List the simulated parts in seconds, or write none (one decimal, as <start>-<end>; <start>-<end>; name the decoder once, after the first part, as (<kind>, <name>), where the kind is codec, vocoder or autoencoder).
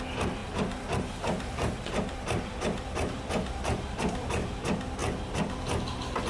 0.4-4.2 (vocoder, BigVGAN v2)